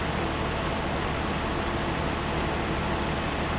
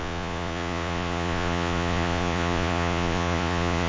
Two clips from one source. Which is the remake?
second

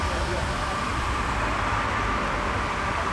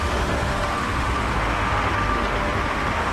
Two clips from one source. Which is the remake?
second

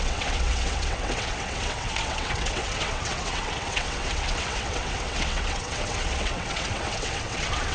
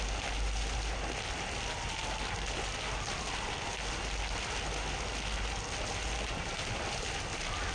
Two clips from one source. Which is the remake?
first